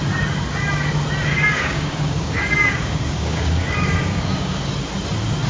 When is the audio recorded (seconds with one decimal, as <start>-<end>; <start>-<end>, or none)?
0.0-1.3; 4.6-5.5